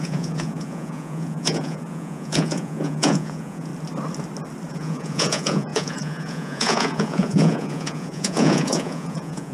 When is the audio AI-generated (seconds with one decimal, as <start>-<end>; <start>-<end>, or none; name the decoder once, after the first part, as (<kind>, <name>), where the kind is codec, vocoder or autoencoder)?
0.0-3.7 (vocoder, Vocos); 4.7-9.5